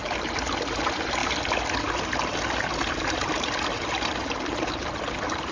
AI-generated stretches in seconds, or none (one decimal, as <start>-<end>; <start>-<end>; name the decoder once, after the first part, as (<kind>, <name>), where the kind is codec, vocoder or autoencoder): none